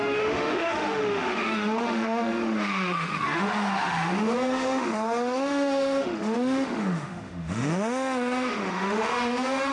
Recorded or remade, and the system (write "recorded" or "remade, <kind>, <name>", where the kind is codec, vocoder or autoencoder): remade, autoencoder, DAC-VAE